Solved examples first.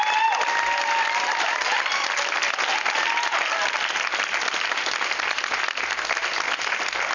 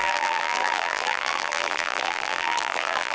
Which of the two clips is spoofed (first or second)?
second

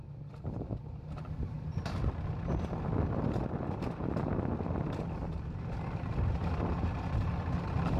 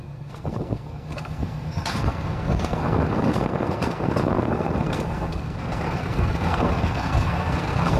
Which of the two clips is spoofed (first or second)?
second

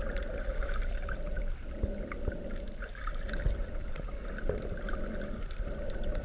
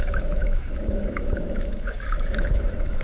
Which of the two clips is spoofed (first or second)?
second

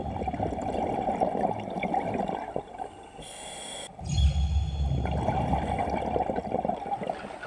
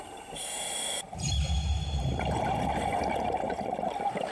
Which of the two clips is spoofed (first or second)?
second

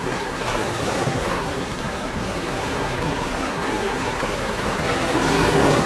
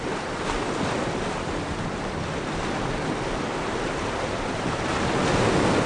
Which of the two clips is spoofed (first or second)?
first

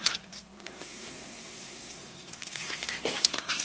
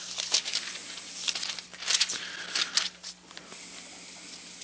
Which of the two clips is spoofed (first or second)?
first